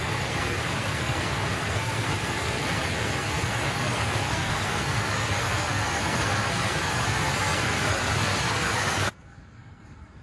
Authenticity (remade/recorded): remade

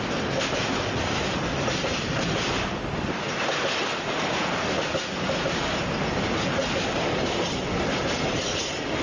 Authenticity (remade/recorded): recorded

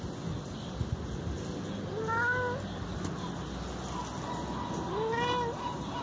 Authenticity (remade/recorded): recorded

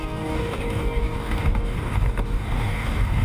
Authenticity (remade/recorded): remade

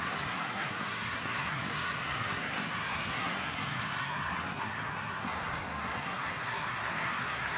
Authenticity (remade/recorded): remade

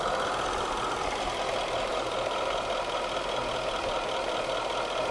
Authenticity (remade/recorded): recorded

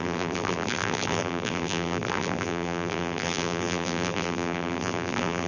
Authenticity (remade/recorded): remade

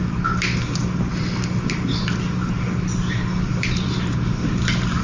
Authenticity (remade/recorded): recorded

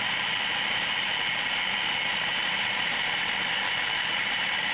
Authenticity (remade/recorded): recorded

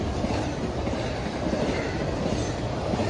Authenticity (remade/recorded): recorded